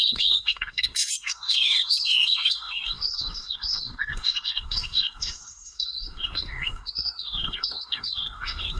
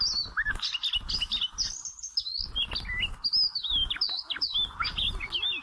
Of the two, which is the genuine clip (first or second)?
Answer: second